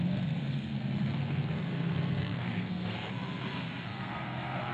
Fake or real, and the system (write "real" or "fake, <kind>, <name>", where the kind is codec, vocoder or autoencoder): fake, codec, SNAC